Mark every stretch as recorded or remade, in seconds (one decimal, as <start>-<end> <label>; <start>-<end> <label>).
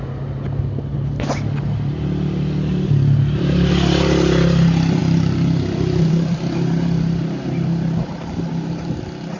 0.0-9.4 recorded